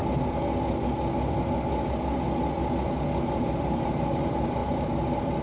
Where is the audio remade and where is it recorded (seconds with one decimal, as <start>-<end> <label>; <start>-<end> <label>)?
0.0-3.2 recorded; 3.2-5.4 remade

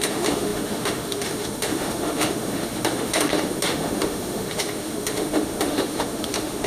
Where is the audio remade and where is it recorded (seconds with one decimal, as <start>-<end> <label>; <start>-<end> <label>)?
0.0-6.7 remade

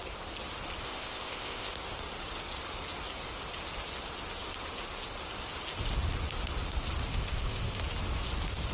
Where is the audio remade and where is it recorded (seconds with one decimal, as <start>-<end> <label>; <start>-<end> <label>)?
0.0-0.8 recorded; 0.8-1.7 remade; 1.7-7.1 recorded; 7.1-7.8 remade; 7.8-8.7 recorded

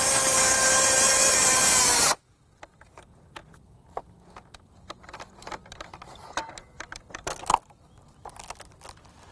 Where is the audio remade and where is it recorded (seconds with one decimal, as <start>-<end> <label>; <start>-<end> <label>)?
0.0-6.6 recorded; 6.6-7.5 remade; 7.5-9.3 recorded